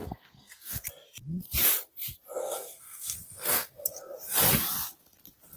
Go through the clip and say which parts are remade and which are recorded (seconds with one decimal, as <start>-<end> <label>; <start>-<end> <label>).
0.0-0.9 remade; 0.9-2.4 recorded; 2.4-3.7 remade; 3.7-5.6 recorded